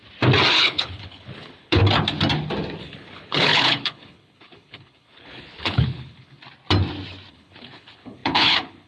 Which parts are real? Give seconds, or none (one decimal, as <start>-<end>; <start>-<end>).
0.0-0.5; 1.8-2.8; 6.4-7.3